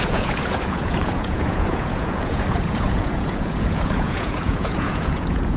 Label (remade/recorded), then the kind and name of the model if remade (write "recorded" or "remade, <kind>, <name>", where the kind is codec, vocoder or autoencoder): remade, vocoder, Vocos